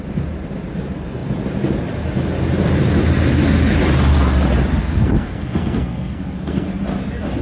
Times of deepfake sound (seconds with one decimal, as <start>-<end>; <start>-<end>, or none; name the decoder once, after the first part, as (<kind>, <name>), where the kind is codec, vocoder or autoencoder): 4.8-6.7 (codec, SNAC)

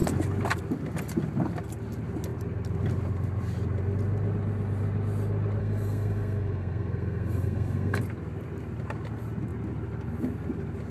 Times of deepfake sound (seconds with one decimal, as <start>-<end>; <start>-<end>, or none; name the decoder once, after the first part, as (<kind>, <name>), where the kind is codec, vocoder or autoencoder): 5.6-8.0 (codec, SNAC)